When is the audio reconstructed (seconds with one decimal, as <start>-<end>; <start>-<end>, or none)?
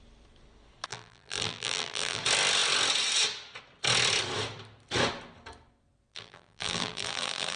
0.9-2.2; 6.1-7.6